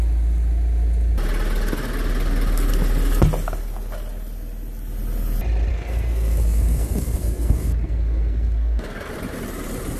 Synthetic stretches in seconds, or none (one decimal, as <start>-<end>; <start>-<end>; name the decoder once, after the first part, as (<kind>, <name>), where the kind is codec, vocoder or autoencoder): 5.7-9.1 (codec, SNAC)